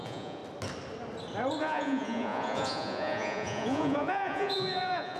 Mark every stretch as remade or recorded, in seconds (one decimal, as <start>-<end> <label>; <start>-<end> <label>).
0.0-0.4 remade; 0.4-1.6 recorded; 1.6-5.2 remade